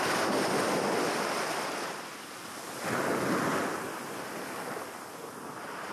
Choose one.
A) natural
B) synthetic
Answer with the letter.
A